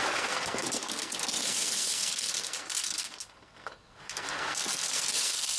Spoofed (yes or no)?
yes